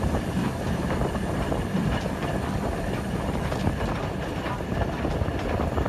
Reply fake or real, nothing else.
real